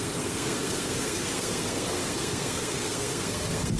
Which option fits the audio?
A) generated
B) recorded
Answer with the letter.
A